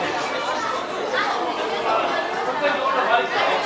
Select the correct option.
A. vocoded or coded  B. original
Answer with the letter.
B